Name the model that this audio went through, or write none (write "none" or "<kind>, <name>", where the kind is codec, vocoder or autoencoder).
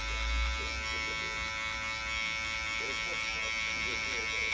none